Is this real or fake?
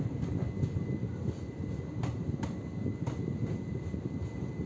real